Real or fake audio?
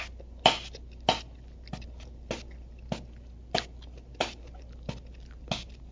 real